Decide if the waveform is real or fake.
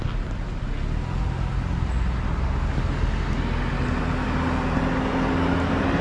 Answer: real